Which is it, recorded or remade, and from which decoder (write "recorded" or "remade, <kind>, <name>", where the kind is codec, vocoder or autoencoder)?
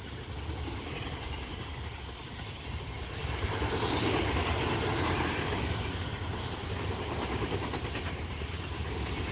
remade, vocoder, BigVGAN v2